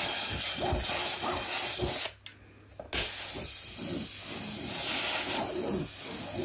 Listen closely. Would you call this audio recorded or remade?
recorded